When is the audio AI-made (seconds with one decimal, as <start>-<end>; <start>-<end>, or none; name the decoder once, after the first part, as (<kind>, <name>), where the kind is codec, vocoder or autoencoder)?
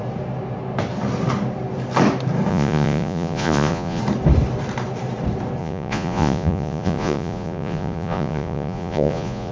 2.5-4.0 (vocoder, Vocos); 5.6-9.5